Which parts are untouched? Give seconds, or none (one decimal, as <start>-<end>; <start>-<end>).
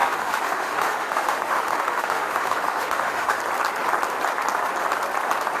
3.4-5.6